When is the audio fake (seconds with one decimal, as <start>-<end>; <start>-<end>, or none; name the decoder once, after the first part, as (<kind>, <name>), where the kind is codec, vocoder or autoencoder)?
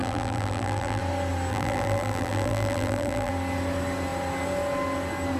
0.0-1.0 (vocoder, BigVGAN v2); 1.5-3.3